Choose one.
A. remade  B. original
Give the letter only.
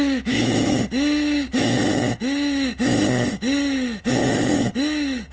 A